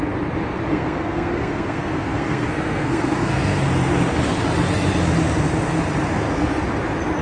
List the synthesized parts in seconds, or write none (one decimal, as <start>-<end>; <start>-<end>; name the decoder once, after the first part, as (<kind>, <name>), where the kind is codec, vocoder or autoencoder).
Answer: 0.7-3.6 (codec, SNAC); 6.1-6.6